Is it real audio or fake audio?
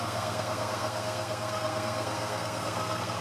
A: fake